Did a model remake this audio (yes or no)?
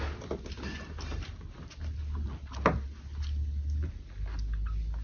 no